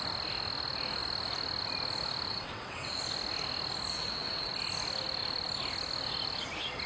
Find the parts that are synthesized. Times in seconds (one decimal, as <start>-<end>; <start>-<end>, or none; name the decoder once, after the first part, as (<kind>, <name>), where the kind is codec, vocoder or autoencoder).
2.3-3.0 (vocoder, WaveNeXt); 3.9-4.5